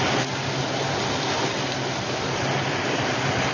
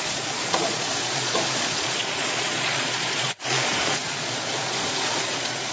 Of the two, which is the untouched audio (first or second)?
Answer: first